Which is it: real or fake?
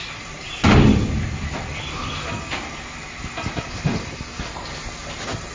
real